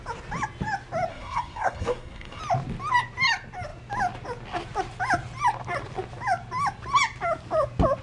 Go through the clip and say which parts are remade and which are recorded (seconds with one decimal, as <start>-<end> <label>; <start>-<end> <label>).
0.0-1.1 recorded; 1.1-2.4 remade; 2.4-8.0 recorded